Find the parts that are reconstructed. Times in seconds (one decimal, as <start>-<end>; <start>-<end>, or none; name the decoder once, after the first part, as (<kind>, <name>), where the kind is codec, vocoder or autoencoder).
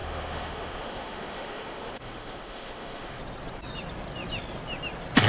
0.0-3.2 (autoencoder, DAC-VAE)